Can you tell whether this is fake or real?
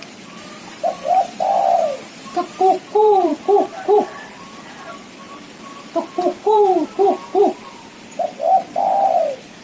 fake